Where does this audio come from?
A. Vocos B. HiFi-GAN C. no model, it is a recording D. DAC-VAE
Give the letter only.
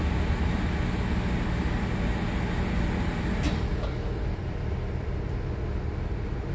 C